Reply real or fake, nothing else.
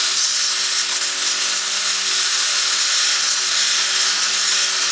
real